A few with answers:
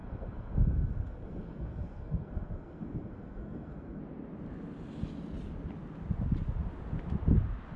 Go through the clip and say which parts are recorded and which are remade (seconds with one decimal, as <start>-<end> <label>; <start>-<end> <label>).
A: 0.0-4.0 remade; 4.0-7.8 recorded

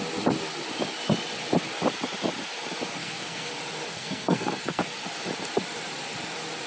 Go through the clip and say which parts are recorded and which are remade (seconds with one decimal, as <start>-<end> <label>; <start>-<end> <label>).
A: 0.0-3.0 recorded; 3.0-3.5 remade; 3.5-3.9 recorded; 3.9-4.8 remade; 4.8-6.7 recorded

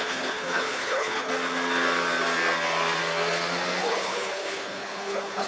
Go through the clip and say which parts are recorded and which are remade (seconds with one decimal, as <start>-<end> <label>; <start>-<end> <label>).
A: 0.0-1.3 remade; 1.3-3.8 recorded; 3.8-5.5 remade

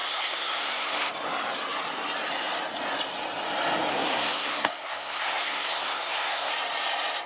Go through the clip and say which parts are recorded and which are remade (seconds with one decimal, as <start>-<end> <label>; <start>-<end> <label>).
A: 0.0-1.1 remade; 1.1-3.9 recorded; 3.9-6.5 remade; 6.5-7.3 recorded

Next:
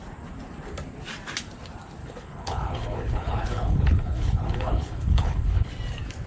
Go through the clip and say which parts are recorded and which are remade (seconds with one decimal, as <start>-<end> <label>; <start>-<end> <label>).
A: 0.0-2.0 recorded; 2.0-5.7 remade; 5.7-6.3 recorded

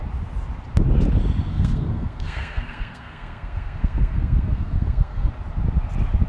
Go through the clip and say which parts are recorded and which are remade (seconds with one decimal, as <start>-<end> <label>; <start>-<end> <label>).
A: 0.0-1.5 recorded; 1.5-5.3 remade; 5.3-6.3 recorded